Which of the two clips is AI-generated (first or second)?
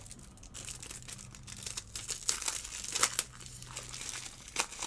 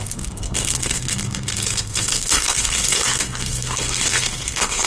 second